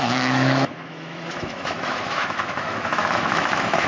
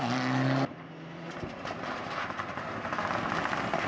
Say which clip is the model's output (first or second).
first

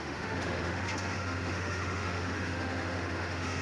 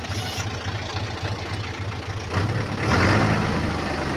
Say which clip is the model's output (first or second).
first